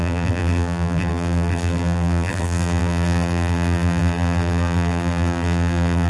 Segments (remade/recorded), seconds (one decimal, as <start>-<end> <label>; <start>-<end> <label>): 0.0-6.1 remade